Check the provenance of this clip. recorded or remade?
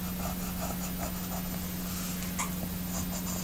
recorded